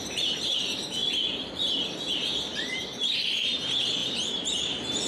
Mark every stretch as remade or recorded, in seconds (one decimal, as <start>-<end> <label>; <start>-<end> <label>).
0.0-1.0 remade; 1.0-2.4 recorded; 2.4-5.1 remade